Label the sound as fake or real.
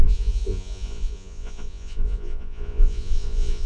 fake